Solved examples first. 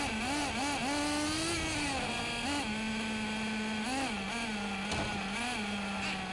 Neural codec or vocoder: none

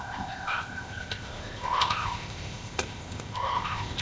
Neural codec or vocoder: codec, ZipCodec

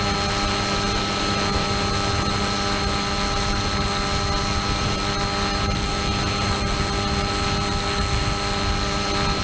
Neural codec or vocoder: none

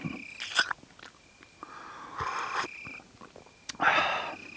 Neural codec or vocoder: none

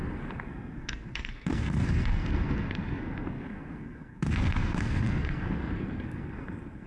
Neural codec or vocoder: codec, SNAC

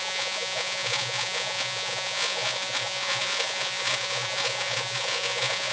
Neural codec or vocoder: vocoder, Vocos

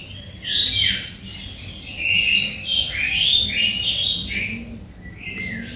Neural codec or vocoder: none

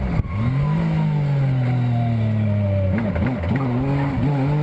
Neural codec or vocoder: none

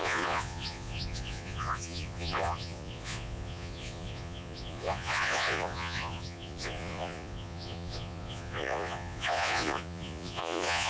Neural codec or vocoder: vocoder, Vocos